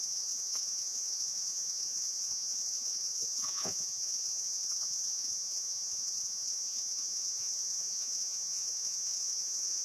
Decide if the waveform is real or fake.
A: fake